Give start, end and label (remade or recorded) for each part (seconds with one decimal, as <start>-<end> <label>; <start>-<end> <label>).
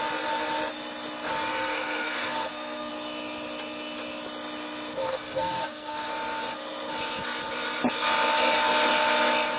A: 0.0-1.5 recorded; 1.5-2.9 remade; 2.9-5.0 recorded; 5.0-6.1 remade; 6.1-9.6 recorded